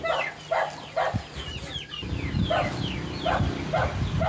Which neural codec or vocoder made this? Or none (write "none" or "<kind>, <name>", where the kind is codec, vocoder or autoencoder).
none